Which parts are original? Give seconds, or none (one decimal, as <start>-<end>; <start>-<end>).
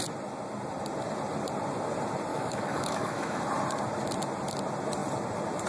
0.0-2.3; 3.4-5.7